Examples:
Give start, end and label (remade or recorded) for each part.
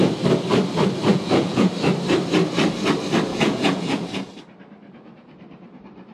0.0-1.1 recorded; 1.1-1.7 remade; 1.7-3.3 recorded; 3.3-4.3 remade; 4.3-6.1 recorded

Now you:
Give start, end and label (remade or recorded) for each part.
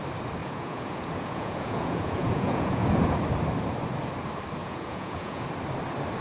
0.0-0.4 recorded; 0.4-3.2 remade; 3.2-4.6 recorded; 4.6-5.5 remade; 5.5-6.2 recorded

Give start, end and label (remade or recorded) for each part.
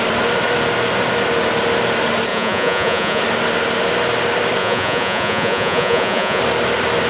0.0-2.3 recorded; 2.3-3.2 remade; 3.2-4.6 recorded; 4.6-6.4 remade; 6.4-7.1 recorded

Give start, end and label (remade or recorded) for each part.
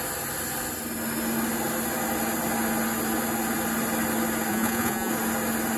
0.0-4.5 recorded; 4.5-5.1 remade; 5.1-5.8 recorded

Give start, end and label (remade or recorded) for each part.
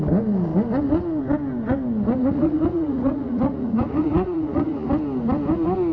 0.0-2.2 recorded; 2.2-4.9 remade; 4.9-5.9 recorded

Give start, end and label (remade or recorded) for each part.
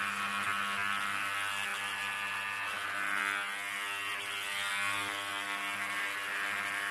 0.0-6.9 recorded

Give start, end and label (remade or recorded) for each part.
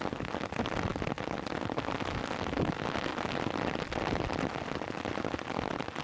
0.0-6.0 recorded